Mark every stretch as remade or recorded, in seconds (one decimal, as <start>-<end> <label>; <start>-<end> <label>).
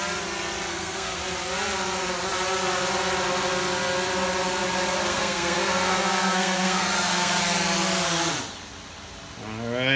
0.0-0.7 recorded; 0.7-1.2 remade; 1.2-5.1 recorded; 5.1-7.4 remade; 7.4-10.0 recorded